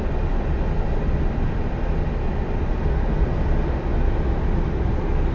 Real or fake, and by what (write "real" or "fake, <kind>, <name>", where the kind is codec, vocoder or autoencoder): real